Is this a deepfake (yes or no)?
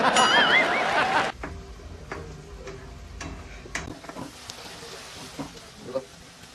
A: no